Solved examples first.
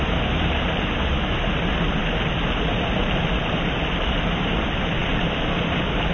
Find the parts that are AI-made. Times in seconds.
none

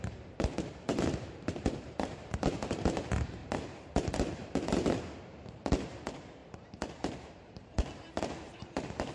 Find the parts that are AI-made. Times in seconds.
0.0-9.1 (vocoder, BigVGAN v2)

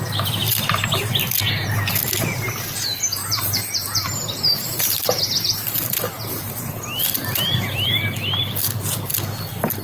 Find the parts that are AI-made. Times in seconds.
3.2-6.8 (vocoder, BigVGAN v2)

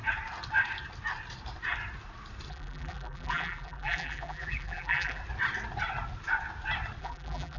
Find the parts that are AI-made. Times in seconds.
2.5-5.2 (vocoder, BigVGAN v2); 7.0-7.6

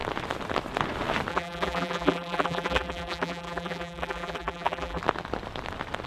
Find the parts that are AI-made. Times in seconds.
1.3-5.0 (vocoder, BigVGAN v2)

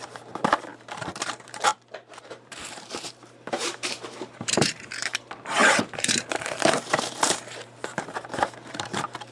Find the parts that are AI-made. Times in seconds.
0.0-1.7 (vocoder, BigVGAN v2); 2.3-9.3